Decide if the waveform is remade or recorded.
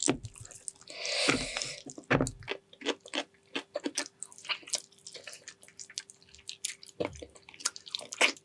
recorded